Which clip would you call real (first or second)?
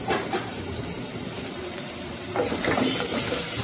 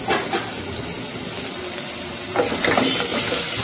second